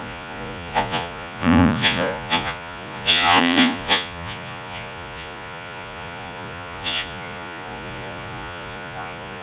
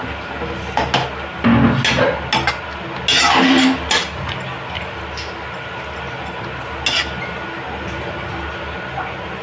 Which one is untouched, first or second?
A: second